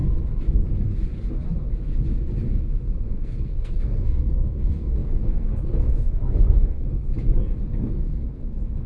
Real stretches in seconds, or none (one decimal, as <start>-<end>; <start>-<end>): 0.0-2.6; 7.1-7.7